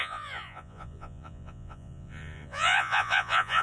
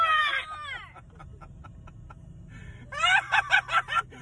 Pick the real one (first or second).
second